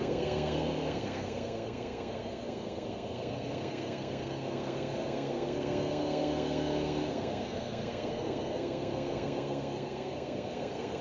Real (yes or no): no